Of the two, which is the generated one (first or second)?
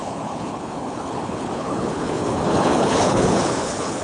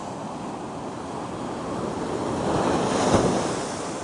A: first